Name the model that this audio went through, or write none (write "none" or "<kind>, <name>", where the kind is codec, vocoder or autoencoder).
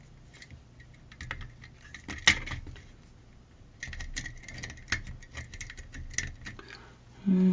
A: none